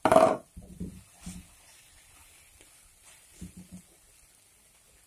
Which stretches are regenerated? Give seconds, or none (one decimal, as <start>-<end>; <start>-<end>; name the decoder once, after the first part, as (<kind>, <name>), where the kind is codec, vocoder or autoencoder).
none